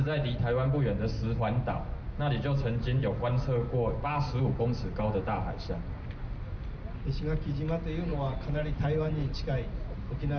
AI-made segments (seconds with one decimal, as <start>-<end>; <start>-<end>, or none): 8.1-9.1